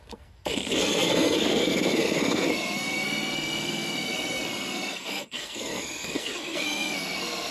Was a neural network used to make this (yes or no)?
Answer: yes